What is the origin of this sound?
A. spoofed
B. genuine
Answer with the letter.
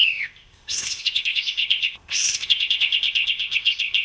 A